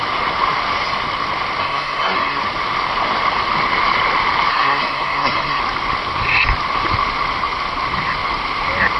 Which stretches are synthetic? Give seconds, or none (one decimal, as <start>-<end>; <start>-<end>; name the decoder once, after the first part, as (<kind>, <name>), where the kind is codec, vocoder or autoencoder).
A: 1.6-2.4 (codec, SNAC); 4.5-5.6